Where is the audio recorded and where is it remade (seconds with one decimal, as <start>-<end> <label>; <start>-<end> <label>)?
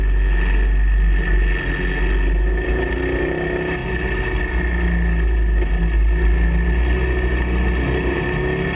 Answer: 0.0-8.7 recorded